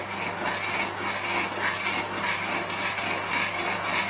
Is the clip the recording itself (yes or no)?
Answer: yes